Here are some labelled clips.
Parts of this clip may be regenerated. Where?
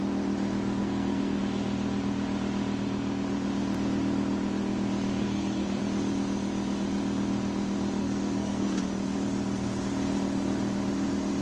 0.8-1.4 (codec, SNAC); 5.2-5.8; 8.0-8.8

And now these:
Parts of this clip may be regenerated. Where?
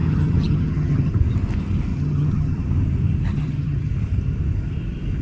0.0-1.1 (vocoder, HiFi-GAN); 1.9-2.6; 3.3-3.9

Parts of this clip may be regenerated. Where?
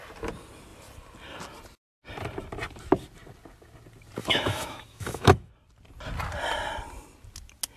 4.2-5.5 (autoencoder, DAC-VAE)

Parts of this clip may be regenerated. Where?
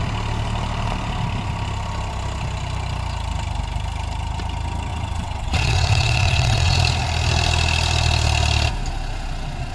4.9-6.8 (vocoder, WaveNeXt)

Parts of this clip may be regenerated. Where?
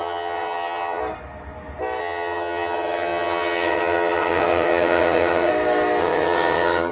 0.0-1.0 (vocoder, HiFi-GAN); 2.0-5.5; 6.0-6.9